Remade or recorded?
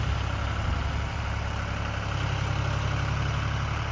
recorded